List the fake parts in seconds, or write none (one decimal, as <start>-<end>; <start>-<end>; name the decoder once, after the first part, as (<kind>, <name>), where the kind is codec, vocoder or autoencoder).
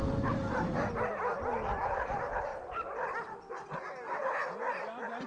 none